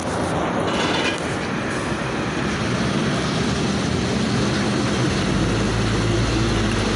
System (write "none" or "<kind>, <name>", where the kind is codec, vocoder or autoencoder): none